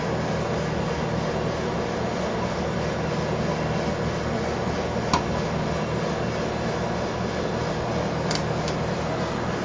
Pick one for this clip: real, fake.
real